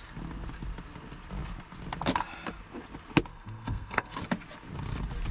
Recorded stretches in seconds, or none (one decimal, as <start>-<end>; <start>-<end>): 0.0-3.3; 4.2-5.3

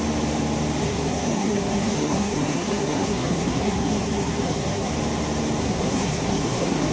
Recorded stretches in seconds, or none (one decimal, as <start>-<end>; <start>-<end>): 0.0-0.8; 4.9-5.6

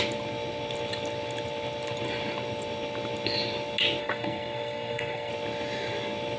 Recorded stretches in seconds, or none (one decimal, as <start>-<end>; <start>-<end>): 0.0-4.0; 5.3-6.4

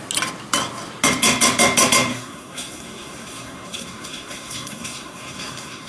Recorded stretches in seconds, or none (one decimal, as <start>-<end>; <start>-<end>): 0.0-2.1

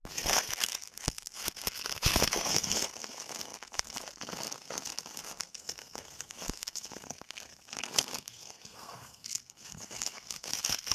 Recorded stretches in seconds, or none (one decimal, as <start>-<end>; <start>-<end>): none